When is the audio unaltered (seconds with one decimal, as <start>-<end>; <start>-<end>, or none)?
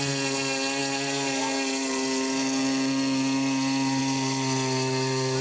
0.0-5.4